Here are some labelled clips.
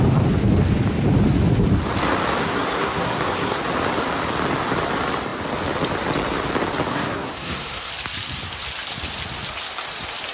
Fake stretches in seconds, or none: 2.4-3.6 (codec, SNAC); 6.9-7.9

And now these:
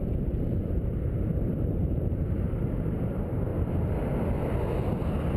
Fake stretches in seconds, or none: 0.0-0.9 (vocoder, BigVGAN v2); 1.5-3.5

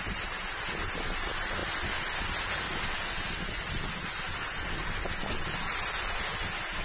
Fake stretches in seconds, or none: none

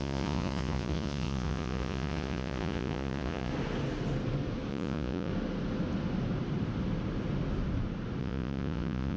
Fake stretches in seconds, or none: 0.0-3.5 (vocoder, Vocos); 4.7-5.3; 8.2-9.2

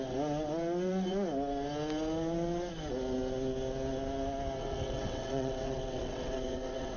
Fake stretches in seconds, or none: 4.6-7.0 (vocoder, WaveNeXt)

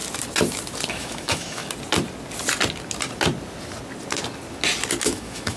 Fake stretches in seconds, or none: 0.9-1.6 (autoencoder, DAC-VAE); 5.0-5.6

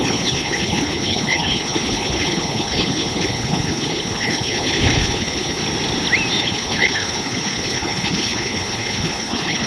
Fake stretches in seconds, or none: 0.0-5.6 (codec, HILCodec); 6.4-9.7

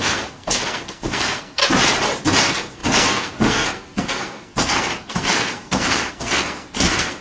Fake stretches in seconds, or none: 0.0-1.6 (codec, SNAC); 2.4-7.2